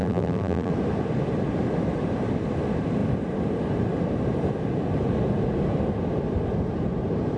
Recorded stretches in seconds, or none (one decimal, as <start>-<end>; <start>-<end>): 0.7-7.4